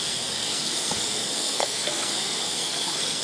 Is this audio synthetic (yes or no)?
yes